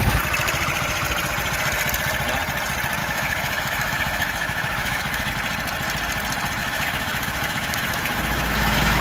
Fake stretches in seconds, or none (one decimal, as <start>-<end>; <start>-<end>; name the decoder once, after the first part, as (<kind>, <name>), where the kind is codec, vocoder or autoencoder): 3.0-5.3 (autoencoder, DAC-VAE); 6.6-9.0